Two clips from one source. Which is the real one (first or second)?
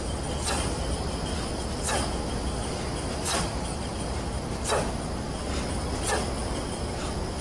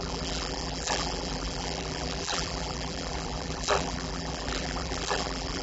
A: first